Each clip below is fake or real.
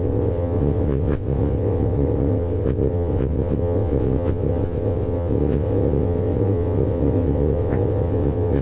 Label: fake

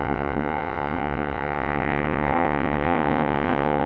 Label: fake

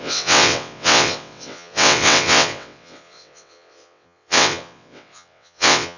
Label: fake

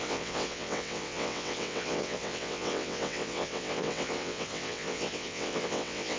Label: fake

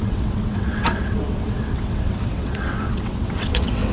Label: fake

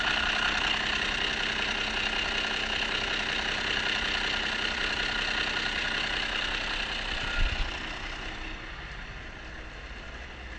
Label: real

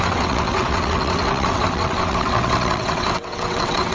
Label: fake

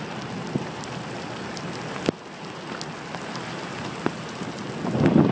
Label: real